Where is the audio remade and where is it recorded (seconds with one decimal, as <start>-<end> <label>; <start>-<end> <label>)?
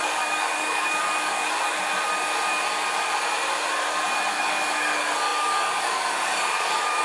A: 0.0-1.4 remade; 1.4-4.3 recorded; 4.3-7.0 remade